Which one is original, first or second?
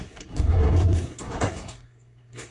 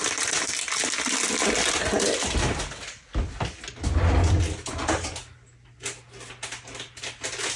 second